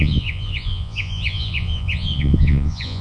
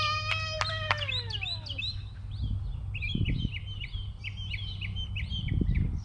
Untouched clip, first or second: second